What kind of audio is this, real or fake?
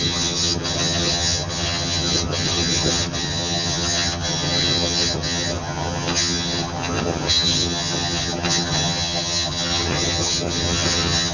fake